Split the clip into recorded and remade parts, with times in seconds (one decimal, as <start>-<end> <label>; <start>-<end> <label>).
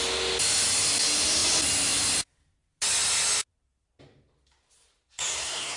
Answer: 0.0-5.3 recorded; 5.3-5.8 remade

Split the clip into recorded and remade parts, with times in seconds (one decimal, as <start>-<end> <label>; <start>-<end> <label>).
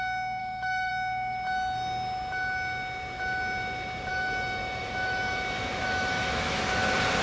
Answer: 0.0-0.4 recorded; 0.4-0.9 remade; 0.9-4.1 recorded; 4.1-6.6 remade; 6.6-7.2 recorded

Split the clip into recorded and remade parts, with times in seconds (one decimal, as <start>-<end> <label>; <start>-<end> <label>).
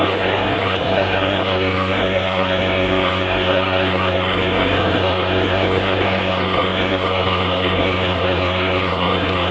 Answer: 0.0-9.5 remade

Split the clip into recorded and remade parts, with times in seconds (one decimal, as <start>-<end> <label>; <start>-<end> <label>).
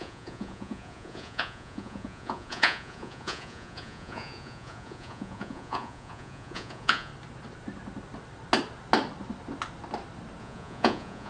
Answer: 0.0-7.1 remade; 7.1-10.4 recorded; 10.4-11.3 remade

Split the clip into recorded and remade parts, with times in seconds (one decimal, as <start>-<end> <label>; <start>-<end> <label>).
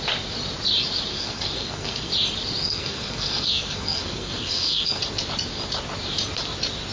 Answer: 0.0-1.1 recorded; 1.1-2.1 remade; 2.1-2.6 recorded; 2.6-5.0 remade; 5.0-6.9 recorded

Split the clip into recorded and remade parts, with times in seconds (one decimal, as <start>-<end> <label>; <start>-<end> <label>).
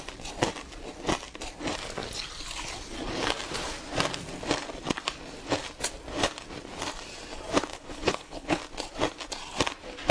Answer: 0.0-7.7 recorded; 7.7-8.6 remade; 8.6-10.1 recorded